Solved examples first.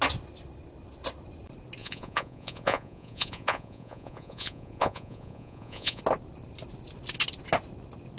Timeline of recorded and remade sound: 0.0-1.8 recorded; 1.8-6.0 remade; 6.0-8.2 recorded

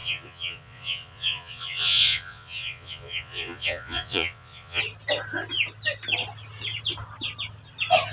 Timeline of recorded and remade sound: 0.0-4.8 remade; 4.8-8.1 recorded